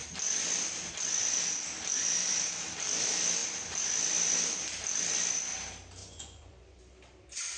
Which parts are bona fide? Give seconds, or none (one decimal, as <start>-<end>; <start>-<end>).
0.0-6.0; 6.8-7.6